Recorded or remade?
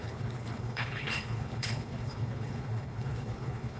remade